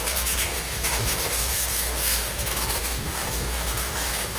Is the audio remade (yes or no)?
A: yes